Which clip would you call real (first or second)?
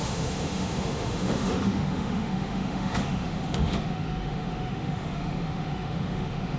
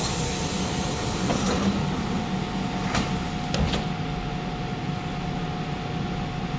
second